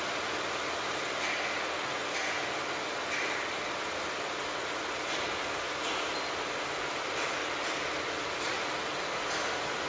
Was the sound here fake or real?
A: real